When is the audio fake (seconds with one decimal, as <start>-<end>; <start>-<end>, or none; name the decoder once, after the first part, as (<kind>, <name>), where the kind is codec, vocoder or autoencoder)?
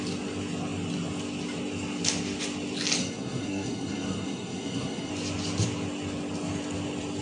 3.0-5.1 (codec, SNAC)